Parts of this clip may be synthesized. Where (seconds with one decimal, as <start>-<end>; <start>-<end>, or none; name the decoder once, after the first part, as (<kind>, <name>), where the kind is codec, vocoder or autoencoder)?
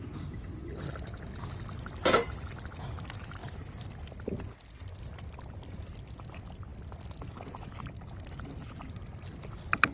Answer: none